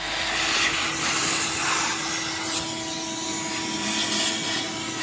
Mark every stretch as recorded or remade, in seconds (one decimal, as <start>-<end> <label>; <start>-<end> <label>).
0.0-5.0 recorded